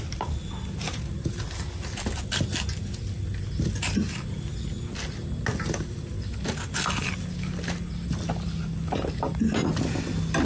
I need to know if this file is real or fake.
real